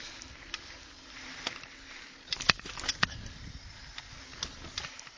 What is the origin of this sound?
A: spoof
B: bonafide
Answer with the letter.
B